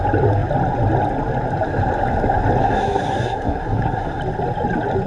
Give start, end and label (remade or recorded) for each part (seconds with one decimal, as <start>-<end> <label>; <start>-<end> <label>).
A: 0.0-2.6 recorded; 2.6-4.2 remade; 4.2-5.1 recorded